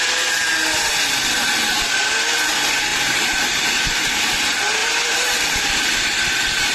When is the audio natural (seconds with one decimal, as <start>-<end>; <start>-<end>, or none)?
0.0-2.9; 4.2-4.8; 5.6-6.7